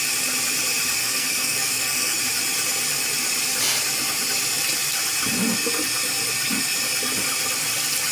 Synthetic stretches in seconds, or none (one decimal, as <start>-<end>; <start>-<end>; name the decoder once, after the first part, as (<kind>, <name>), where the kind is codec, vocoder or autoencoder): 1.0-2.2 (codec, SNAC)